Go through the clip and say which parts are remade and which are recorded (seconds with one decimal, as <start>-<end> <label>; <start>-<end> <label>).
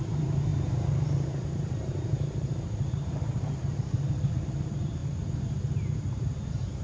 0.0-5.0 remade; 5.0-6.0 recorded; 6.0-6.8 remade